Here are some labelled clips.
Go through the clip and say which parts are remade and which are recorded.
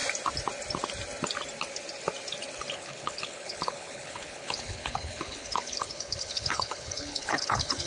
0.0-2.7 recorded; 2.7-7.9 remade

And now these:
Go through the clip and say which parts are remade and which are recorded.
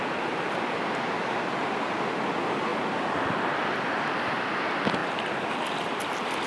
0.0-6.5 recorded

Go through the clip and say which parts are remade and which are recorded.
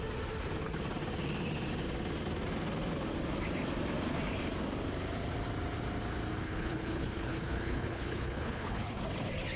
0.0-6.4 recorded; 6.4-9.0 remade; 9.0-9.6 recorded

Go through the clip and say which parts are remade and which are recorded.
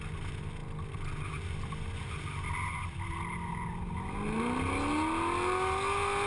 0.0-6.3 recorded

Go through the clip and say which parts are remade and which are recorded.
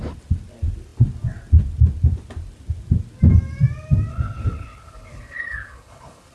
0.0-4.1 recorded; 4.1-6.3 remade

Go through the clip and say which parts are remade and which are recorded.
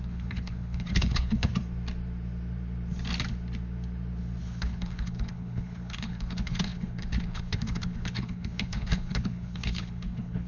0.0-1.5 remade; 1.5-4.4 recorded; 4.4-10.5 remade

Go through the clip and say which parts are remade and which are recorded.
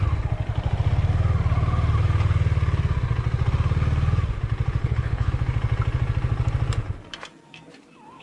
0.0-4.8 recorded; 4.8-5.3 remade; 5.3-8.2 recorded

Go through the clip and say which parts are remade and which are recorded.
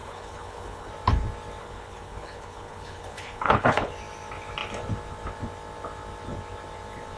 0.0-0.9 remade; 0.9-1.6 recorded; 1.6-3.9 remade; 3.9-7.2 recorded